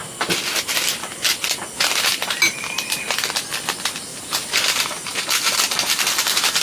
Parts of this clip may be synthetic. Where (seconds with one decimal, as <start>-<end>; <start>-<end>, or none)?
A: 2.1-2.8; 4.1-5.2